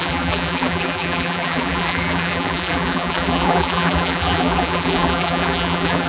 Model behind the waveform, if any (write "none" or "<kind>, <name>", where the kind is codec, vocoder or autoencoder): vocoder, BigVGAN v2